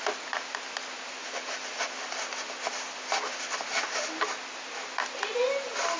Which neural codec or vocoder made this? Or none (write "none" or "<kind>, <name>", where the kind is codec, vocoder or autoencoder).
none